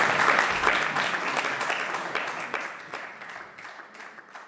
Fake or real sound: real